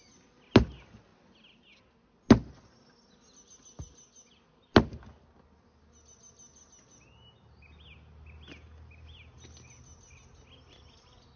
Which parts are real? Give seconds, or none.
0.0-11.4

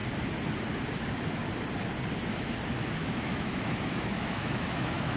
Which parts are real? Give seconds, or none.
0.0-3.0

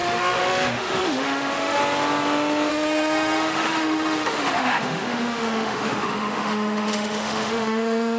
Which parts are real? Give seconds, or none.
1.8-2.7

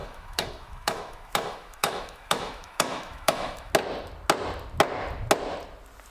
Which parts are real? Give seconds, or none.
3.7-6.1

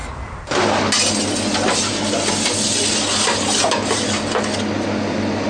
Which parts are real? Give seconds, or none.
0.0-5.5